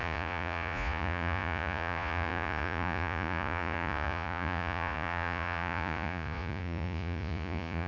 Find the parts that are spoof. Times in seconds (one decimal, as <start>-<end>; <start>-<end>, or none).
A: 0.0-7.9